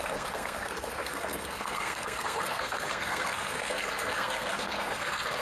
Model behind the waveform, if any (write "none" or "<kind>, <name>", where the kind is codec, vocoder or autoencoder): codec, SNAC